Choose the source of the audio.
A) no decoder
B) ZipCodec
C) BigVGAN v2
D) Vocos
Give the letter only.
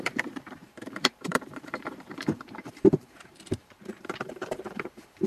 C